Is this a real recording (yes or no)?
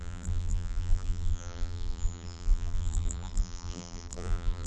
no